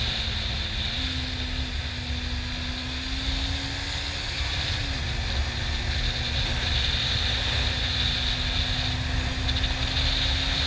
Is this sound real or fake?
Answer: real